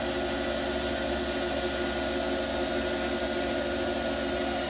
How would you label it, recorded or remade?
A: recorded